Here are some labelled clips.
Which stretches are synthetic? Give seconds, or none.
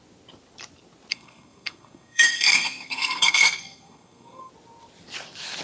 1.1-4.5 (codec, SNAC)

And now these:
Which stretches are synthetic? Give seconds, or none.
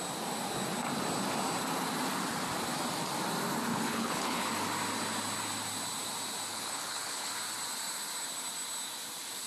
3.7-4.5 (codec, HILCodec); 6.5-7.3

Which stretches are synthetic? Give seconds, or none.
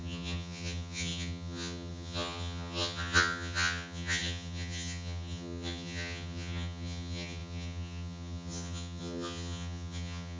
0.0-10.4 (vocoder, HiFi-GAN)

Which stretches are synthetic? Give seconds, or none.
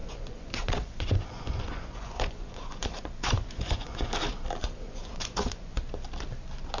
0.0-4.1 (vocoder, Vocos); 4.6-5.8